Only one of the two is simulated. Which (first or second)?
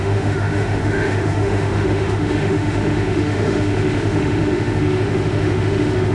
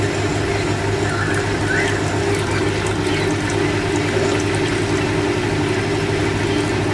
first